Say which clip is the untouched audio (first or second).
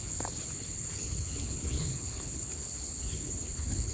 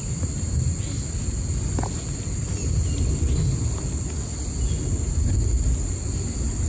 second